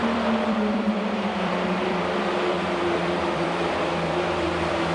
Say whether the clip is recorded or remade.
remade